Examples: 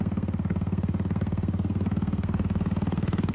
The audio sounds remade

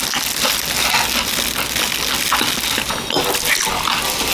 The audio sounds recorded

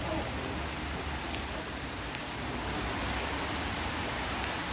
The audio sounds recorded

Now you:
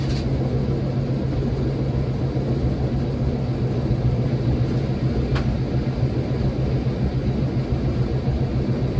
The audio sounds recorded